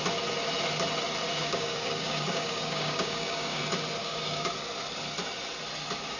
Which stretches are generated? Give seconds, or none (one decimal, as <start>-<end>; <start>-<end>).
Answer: 1.4-3.6; 4.0-4.5